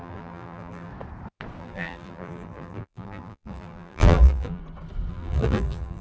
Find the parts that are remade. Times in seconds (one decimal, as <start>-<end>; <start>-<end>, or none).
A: 0.0-0.9; 1.6-4.6; 5.1-6.0